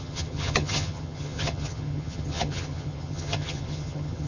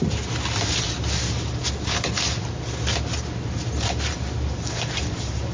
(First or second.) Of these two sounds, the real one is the second